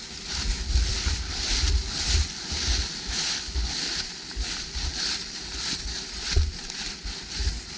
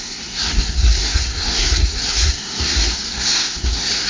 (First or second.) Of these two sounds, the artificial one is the second